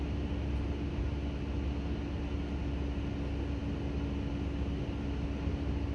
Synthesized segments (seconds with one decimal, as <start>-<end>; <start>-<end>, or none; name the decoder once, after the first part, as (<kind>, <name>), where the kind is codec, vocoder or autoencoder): none